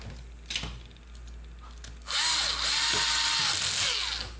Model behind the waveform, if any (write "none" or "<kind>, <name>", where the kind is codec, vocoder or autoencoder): none